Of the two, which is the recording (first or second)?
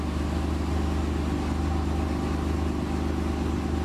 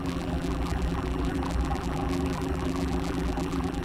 first